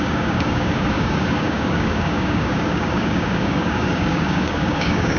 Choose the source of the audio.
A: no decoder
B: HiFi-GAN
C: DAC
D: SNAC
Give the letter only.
C